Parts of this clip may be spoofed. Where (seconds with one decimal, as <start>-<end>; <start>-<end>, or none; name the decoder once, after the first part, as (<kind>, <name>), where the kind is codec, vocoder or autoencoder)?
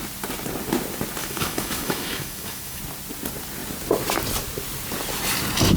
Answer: 1.2-2.8 (autoencoder, DAC-VAE)